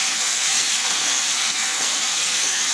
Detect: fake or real fake